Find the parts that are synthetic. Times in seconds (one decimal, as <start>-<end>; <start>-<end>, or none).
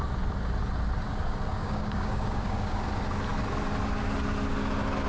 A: 1.5-2.8